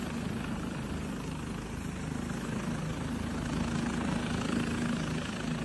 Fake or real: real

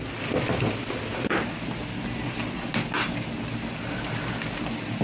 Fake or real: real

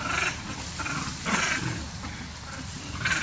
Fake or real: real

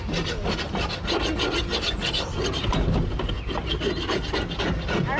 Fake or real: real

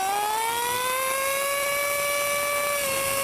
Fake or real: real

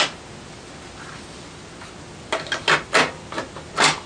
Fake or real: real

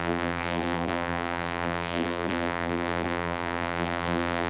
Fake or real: fake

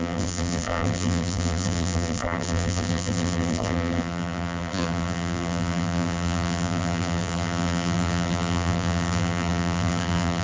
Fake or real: fake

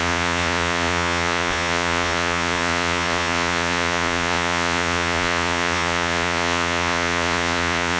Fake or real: fake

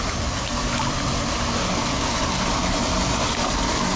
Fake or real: real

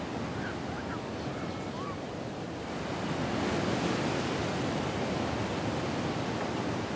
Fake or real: real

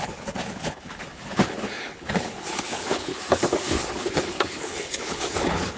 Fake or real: fake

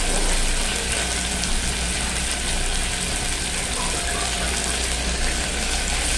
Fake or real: real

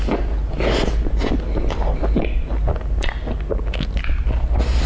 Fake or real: real